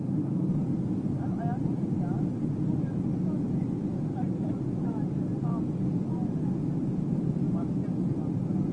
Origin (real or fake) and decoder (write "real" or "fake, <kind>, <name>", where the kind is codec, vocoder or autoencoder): real